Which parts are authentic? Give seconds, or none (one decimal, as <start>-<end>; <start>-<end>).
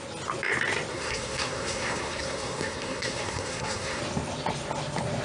0.0-0.9; 4.0-5.2